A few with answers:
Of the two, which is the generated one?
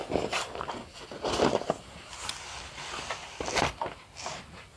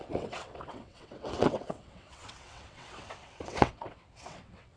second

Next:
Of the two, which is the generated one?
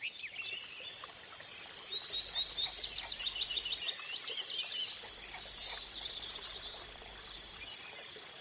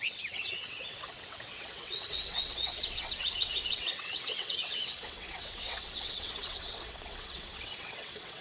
second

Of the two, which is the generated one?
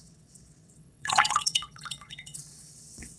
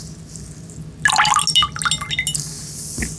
first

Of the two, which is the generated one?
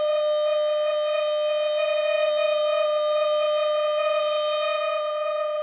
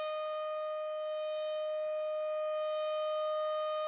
first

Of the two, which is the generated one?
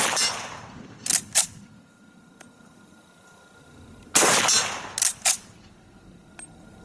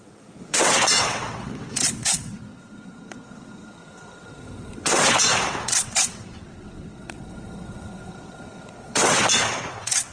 second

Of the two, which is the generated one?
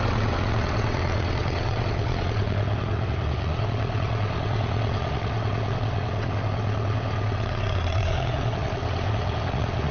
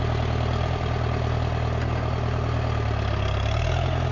first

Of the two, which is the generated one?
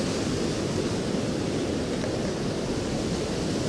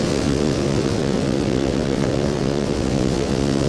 second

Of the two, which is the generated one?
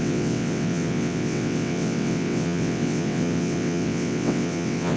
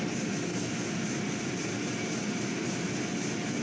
first